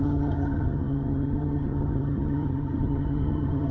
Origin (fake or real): fake